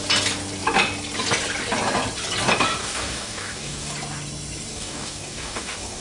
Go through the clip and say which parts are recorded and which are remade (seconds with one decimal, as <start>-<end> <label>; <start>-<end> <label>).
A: 0.0-2.8 recorded; 2.8-3.9 remade; 3.9-4.7 recorded; 4.7-6.0 remade